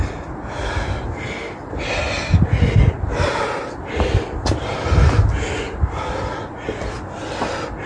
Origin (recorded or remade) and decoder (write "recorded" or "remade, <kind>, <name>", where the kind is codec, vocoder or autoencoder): recorded